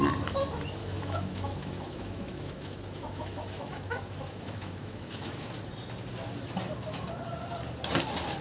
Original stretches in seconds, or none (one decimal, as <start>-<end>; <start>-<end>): 0.0-0.8; 5.5-8.4